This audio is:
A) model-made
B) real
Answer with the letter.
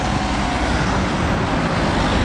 B